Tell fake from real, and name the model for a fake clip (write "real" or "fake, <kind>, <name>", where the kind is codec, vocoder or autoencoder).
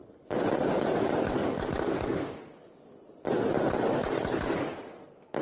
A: real